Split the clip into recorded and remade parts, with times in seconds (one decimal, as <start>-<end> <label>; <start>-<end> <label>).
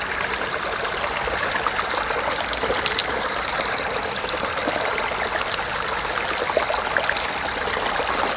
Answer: 0.0-8.4 recorded